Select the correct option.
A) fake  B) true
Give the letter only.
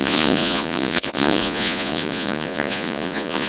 A